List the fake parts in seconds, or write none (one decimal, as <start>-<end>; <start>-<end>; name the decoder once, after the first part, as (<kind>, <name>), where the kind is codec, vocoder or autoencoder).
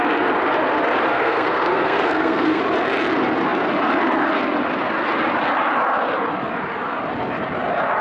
1.1-2.6 (codec, SNAC)